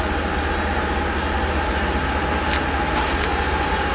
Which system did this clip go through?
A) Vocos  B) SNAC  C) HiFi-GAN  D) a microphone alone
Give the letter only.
D